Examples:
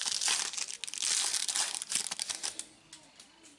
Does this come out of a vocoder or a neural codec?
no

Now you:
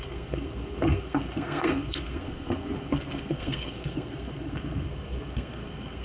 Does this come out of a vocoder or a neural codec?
yes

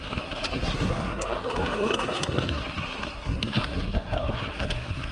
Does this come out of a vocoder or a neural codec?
yes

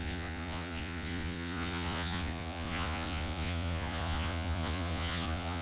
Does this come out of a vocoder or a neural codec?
yes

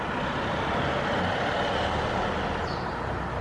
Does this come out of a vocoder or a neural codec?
no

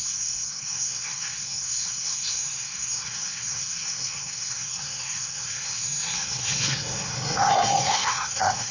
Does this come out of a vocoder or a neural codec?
yes